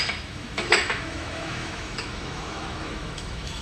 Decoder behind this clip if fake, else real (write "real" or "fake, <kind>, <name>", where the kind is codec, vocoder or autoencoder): fake, autoencoder, DAC-VAE